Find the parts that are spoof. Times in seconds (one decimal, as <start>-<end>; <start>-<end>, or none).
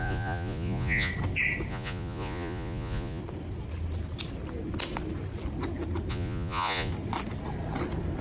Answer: 0.0-1.1; 1.7-3.2; 6.1-6.9